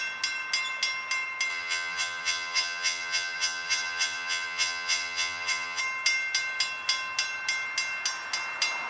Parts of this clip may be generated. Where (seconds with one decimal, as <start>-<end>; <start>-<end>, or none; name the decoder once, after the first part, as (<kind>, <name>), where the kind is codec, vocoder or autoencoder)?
1.5-5.8 (vocoder, HiFi-GAN)